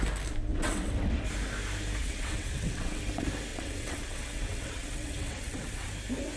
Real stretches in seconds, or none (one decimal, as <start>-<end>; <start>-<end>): 0.0-0.5; 1.2-2.0; 3.0-3.5; 5.9-6.4